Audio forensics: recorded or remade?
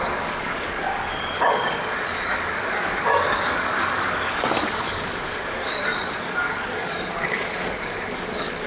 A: remade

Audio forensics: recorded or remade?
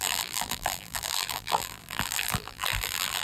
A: remade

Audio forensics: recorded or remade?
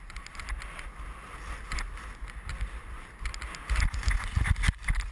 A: recorded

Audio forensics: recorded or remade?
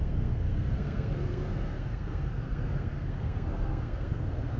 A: remade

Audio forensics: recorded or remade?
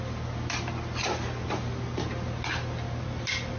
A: recorded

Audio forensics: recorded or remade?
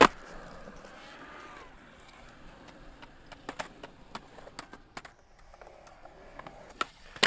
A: recorded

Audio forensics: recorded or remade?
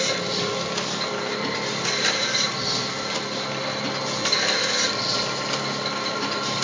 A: recorded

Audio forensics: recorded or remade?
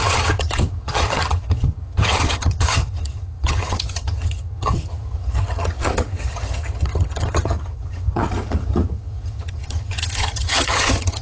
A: remade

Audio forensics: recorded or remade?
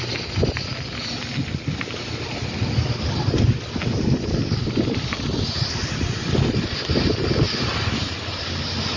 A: recorded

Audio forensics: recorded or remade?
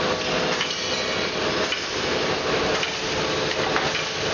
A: recorded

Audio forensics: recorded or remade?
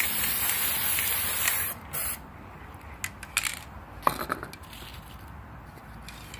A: recorded